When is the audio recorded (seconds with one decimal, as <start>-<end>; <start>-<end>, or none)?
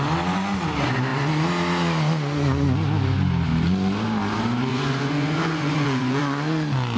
0.0-4.7; 6.2-7.0